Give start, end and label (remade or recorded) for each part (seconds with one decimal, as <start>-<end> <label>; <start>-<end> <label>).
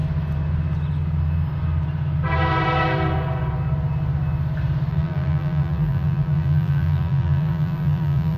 0.0-4.9 recorded; 4.9-8.4 remade